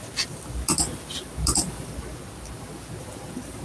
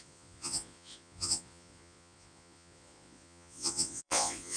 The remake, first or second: second